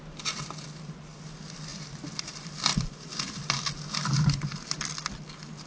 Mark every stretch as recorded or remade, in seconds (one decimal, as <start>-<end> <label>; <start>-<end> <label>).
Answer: 0.0-5.7 recorded